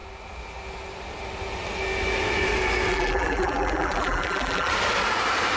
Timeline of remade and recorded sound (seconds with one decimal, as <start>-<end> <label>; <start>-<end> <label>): 0.0-2.9 recorded; 2.9-4.7 remade; 4.7-5.6 recorded